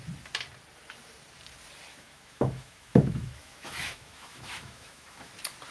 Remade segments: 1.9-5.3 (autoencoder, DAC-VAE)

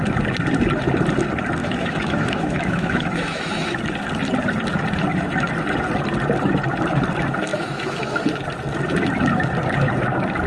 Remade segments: 1.6-3.8 (autoencoder, DAC-VAE); 7.5-8.2

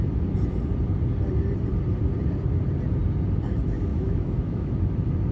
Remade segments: 3.9-4.7 (autoencoder, DAC-VAE)